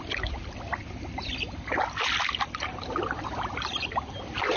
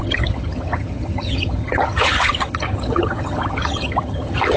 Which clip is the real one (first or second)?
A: first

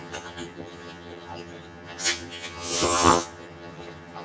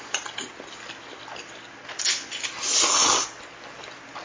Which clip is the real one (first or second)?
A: second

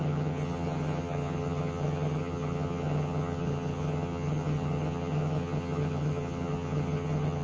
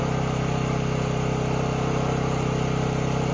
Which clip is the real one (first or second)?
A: second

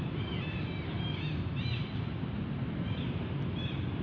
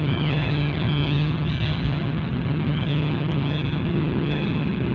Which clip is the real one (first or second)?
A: first